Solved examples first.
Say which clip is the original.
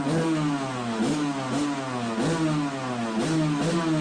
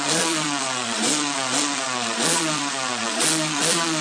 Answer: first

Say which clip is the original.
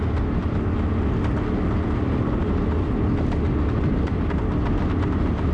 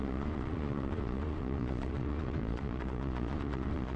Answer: first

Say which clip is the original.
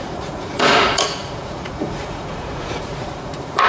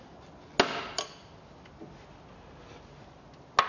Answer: second